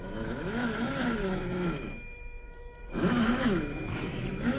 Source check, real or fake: fake